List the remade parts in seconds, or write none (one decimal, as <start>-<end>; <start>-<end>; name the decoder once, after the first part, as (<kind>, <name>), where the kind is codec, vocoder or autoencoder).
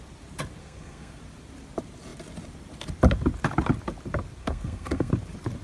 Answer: 0.6-1.2 (codec, SNAC); 4.4-5.1